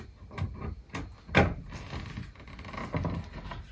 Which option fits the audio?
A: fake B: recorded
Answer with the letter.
B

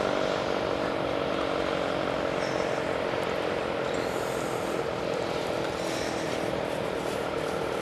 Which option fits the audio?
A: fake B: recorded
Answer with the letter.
B